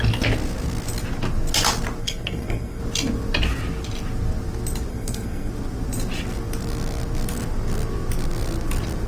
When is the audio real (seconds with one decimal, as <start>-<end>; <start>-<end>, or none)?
0.0-2.0; 2.8-4.9; 5.5-9.1